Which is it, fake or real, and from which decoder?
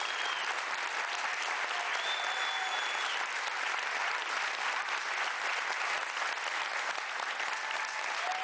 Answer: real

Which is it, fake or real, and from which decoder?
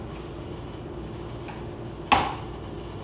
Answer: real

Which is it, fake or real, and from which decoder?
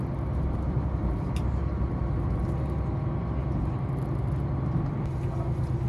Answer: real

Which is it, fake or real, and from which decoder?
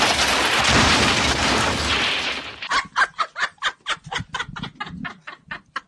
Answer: real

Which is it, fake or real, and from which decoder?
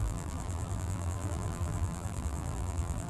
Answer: fake, vocoder, BigVGAN v2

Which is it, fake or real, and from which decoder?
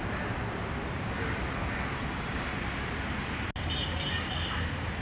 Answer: real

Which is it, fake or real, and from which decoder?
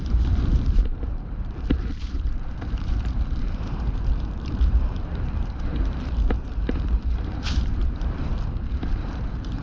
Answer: fake, vocoder, BigVGAN v2